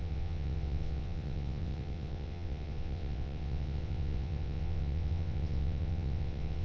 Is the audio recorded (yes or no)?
no